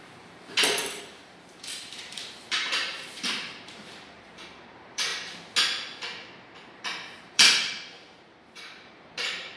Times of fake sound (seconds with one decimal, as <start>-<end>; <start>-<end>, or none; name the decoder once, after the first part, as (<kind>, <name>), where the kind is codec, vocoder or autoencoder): 0.0-5.1 (vocoder, BigVGAN v2); 6.7-9.6